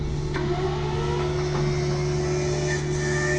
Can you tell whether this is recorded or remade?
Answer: recorded